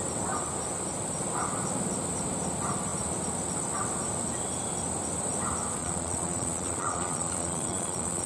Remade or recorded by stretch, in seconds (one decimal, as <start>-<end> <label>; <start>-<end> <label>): 0.0-5.8 recorded; 5.8-8.3 remade